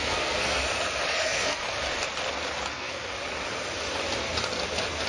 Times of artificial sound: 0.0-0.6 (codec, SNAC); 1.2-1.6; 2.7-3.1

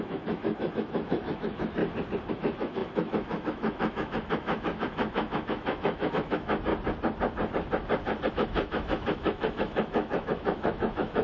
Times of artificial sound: 0.0-1.8 (autoencoder, DAC-VAE); 2.3-6.7; 8.3-11.2

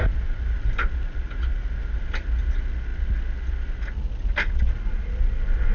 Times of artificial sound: none

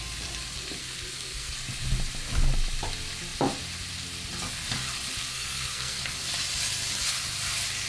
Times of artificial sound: 0.8-1.5 (codec, SNAC); 5.3-6.0

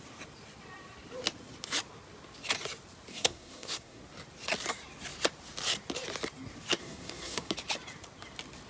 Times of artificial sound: 3.1-4.0 (codec, SNAC); 6.8-7.5

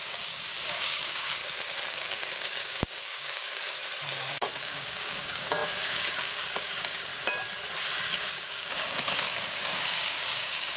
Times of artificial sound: 0.0-1.4 (codec, DAC); 1.9-3.8; 4.3-7.1; 8.2-10.8

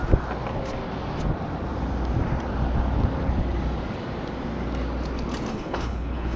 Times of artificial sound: 5.5-6.4 (codec, HILCodec)

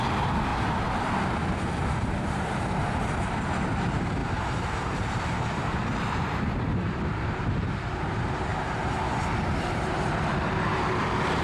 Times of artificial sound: 0.0-8.5 (vocoder, BigVGAN v2); 9.6-11.4